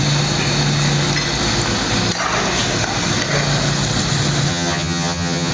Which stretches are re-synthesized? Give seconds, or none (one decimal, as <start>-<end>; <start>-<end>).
4.5-5.5